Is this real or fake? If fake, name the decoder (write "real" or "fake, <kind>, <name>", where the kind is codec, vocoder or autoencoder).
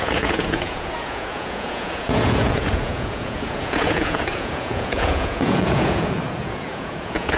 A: fake, vocoder, Vocos